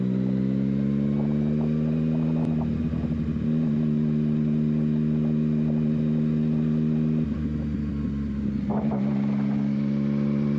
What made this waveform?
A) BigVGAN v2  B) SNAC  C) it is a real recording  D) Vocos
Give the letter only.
C